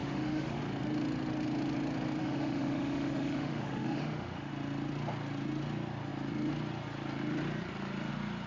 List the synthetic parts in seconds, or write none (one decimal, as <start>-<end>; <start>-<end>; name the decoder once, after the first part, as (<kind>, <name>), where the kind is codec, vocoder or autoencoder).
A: 0.0-0.6 (autoencoder, DAC-VAE); 2.2-4.5